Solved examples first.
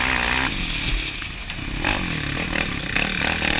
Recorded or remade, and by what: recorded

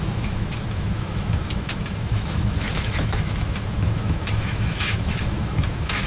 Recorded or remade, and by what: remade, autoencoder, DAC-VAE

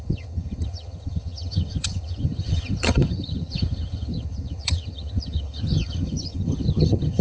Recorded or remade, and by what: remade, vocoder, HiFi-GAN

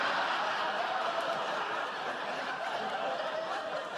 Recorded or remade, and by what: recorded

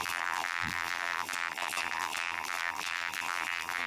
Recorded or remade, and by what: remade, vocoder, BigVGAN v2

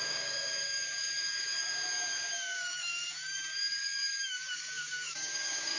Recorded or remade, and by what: remade, codec, DAC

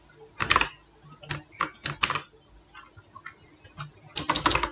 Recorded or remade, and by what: recorded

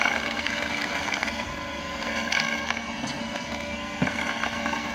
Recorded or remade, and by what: remade, codec, SNAC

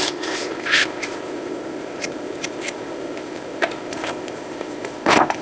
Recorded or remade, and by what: remade, codec, ZipCodec